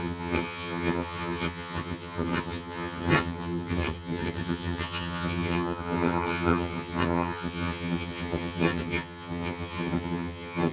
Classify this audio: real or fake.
fake